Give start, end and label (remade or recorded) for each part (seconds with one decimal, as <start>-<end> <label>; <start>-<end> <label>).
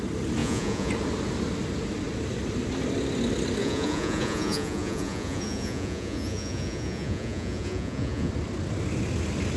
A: 0.0-0.4 recorded; 0.4-0.9 remade; 0.9-3.6 recorded; 3.6-8.3 remade; 8.3-9.6 recorded